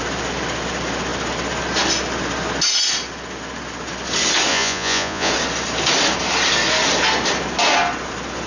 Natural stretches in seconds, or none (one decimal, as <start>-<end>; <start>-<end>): 0.0-4.5; 5.3-8.5